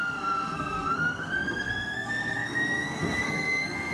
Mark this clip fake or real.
fake